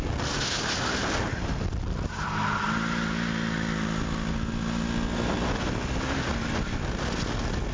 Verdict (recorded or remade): recorded